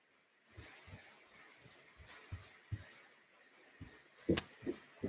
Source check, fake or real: real